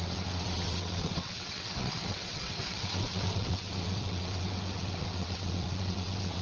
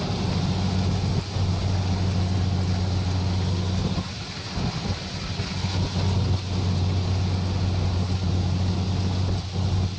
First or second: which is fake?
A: first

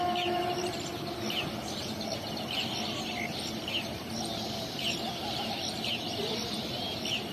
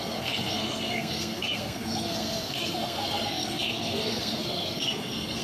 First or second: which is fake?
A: second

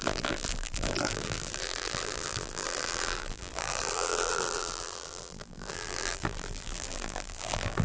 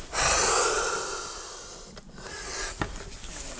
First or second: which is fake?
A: first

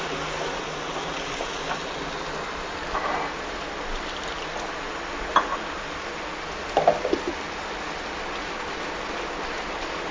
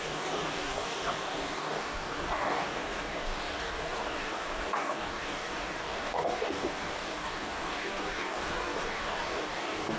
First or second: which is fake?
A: second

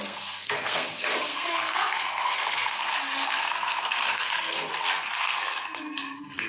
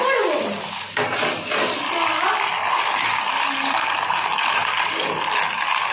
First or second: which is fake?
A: first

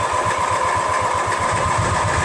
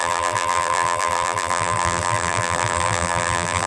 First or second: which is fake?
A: second